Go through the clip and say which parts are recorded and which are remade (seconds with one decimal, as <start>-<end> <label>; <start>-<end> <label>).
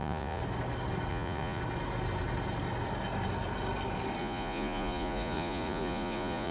0.0-0.4 remade; 0.4-1.1 recorded; 1.1-1.6 remade; 1.6-4.2 recorded; 4.2-6.5 remade